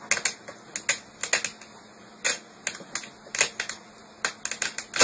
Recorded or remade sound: recorded